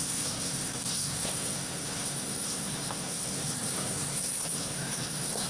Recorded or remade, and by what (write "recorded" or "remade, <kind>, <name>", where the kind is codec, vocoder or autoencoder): remade, codec, SNAC